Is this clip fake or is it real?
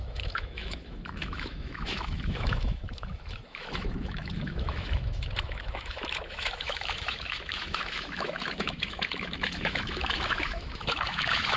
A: fake